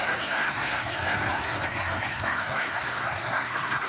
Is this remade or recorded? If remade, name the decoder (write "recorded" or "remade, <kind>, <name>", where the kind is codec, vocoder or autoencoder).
remade, codec, SNAC